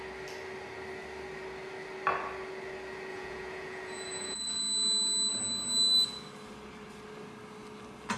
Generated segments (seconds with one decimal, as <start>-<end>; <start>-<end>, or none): 3.1-4.6